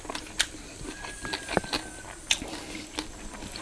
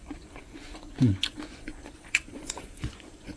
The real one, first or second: first